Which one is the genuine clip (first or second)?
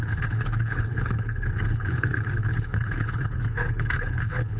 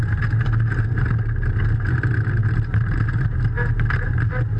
second